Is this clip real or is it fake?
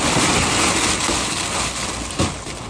real